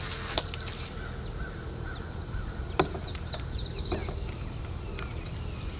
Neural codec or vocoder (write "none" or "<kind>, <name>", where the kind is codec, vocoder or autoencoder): none